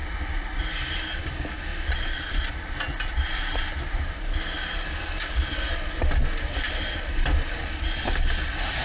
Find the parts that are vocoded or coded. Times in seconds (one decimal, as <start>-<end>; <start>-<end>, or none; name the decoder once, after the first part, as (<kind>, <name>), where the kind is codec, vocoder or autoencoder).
none